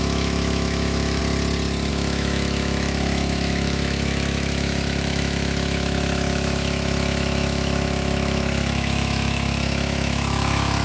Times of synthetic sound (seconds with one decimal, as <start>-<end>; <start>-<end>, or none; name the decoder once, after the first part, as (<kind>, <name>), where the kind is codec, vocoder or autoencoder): 0.0-1.2 (autoencoder, DAC-VAE); 1.9-10.8